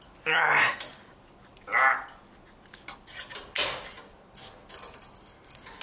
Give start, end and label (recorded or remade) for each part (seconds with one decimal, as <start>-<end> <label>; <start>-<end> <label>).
0.0-5.8 recorded